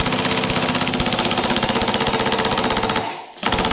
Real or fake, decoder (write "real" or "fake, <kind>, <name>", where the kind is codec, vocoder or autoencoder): real